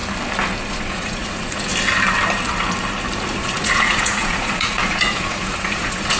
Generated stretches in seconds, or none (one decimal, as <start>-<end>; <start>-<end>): 0.7-1.7; 3.3-6.2